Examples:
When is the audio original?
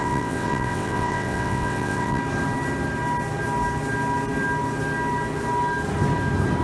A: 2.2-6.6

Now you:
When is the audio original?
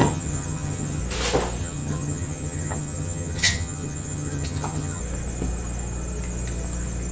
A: 1.0-1.6; 5.0-7.1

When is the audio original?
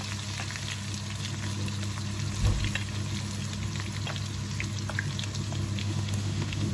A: 0.0-5.8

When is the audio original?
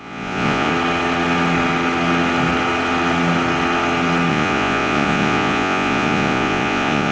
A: 0.7-4.3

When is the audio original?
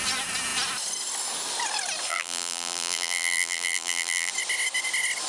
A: 0.0-2.1; 4.3-5.3